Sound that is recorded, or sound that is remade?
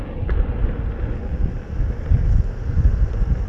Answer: recorded